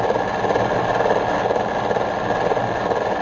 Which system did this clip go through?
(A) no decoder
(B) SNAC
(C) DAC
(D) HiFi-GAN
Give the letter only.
A